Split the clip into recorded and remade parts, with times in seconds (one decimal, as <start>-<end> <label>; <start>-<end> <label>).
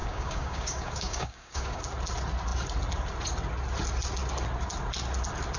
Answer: 0.0-1.8 remade; 1.8-5.6 recorded